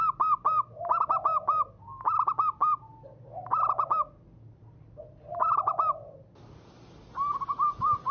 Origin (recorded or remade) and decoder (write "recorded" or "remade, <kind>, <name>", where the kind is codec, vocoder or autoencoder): recorded